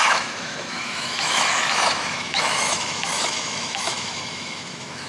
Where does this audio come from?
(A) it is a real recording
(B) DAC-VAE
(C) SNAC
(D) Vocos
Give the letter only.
B